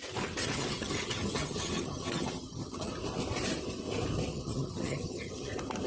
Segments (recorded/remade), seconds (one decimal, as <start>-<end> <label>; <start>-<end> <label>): 0.0-0.4 recorded; 0.4-2.9 remade; 2.9-4.3 recorded; 4.3-5.5 remade; 5.5-5.9 recorded